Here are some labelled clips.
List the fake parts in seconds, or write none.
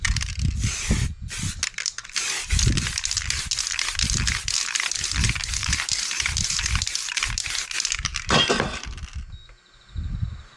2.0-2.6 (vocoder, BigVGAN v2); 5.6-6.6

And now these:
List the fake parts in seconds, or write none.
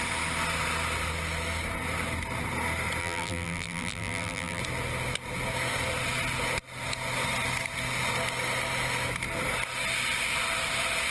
3.0-4.6 (vocoder, BigVGAN v2)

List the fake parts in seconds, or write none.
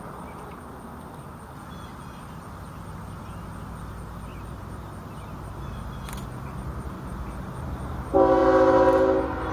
4.3-7.2 (vocoder, BigVGAN v2)